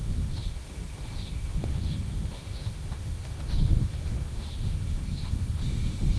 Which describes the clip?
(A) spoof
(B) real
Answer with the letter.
A